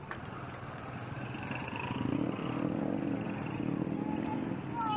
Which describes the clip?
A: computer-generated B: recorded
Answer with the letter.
B